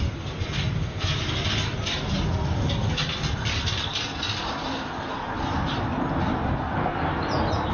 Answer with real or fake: real